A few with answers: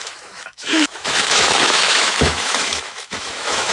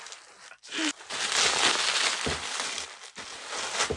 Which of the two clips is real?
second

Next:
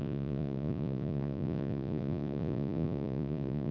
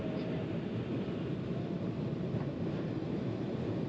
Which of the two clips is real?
second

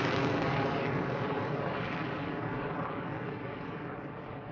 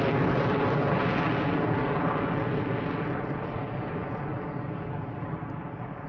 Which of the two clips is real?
second